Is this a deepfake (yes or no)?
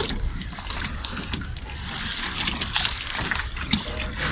no